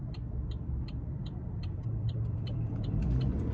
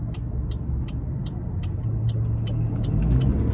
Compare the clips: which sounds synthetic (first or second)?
first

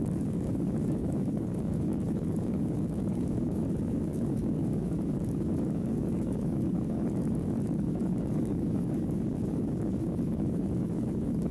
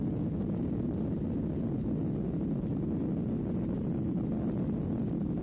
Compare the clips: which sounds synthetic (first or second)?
first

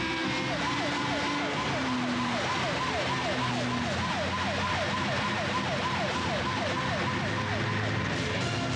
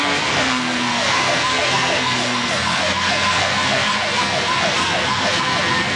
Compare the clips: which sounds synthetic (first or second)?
second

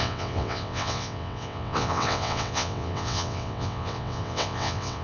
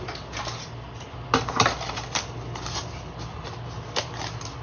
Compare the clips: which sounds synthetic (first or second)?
first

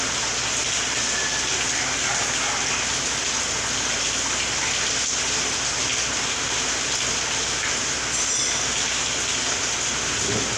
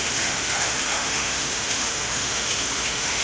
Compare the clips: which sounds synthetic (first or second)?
second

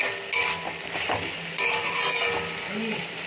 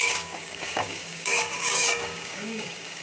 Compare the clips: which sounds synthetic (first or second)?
second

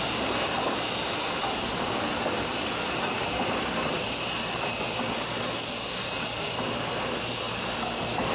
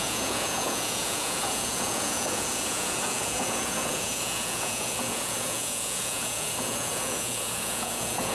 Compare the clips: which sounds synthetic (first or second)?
second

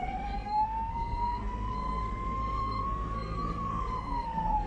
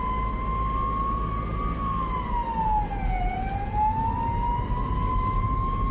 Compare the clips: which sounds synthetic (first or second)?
first